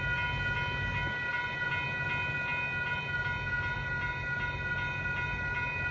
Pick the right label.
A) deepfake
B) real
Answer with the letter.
B